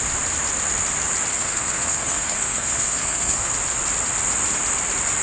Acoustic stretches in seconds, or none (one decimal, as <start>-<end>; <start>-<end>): 0.0-1.3; 3.5-5.2